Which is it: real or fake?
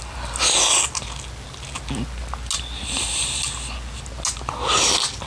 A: real